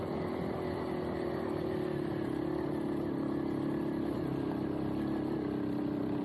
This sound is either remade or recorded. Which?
recorded